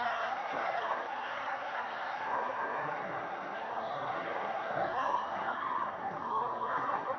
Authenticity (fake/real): fake